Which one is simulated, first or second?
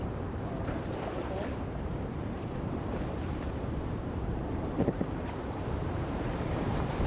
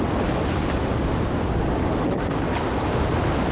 first